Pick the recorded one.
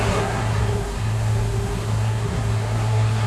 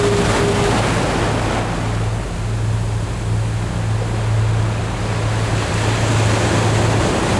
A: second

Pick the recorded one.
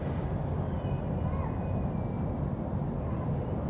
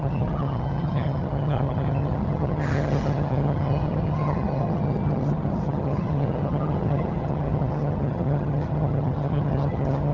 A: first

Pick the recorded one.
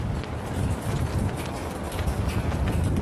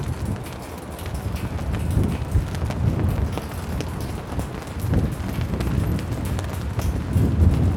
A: second